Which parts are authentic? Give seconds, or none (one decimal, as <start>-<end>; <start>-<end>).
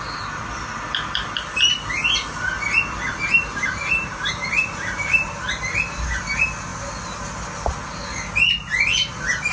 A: 0.0-3.1; 5.4-9.5